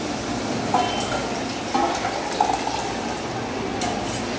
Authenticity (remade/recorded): recorded